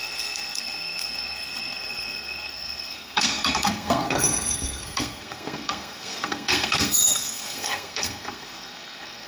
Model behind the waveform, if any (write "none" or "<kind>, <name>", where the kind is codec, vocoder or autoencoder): codec, SNAC